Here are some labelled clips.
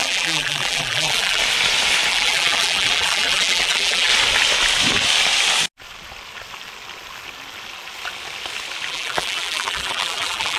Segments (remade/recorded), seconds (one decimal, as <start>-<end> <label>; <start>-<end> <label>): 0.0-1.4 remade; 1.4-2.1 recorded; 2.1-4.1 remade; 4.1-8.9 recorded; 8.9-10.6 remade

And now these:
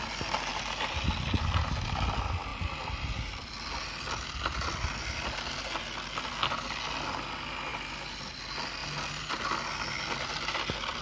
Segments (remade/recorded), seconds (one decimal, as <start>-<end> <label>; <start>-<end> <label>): 0.0-0.5 recorded; 0.5-1.1 remade; 1.1-11.0 recorded

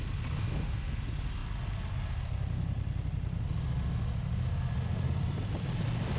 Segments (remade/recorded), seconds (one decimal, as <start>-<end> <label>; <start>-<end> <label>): 0.0-4.9 recorded; 4.9-6.2 remade

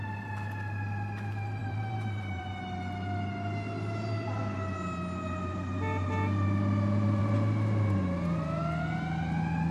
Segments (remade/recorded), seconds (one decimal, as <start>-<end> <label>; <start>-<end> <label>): 0.0-1.6 recorded; 1.6-2.4 remade; 2.4-9.7 recorded